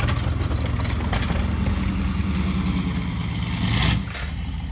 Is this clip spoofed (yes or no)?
no